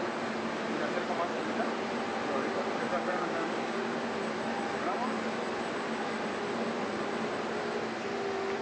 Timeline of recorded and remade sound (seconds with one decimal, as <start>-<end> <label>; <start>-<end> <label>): 0.0-2.9 recorded; 2.9-4.0 remade; 4.0-8.6 recorded